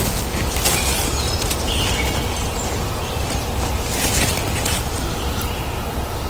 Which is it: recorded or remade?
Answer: recorded